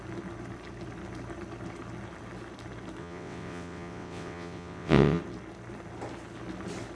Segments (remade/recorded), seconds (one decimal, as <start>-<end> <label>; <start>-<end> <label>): 0.0-3.0 recorded; 3.0-5.2 remade; 5.2-7.0 recorded